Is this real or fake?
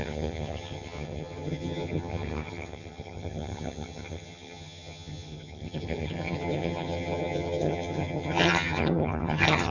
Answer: fake